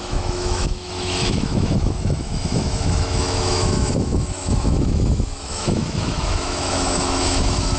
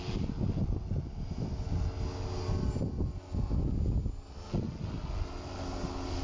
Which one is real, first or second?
second